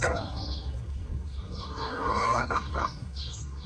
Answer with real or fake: fake